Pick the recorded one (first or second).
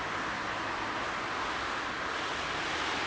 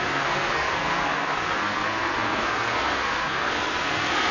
first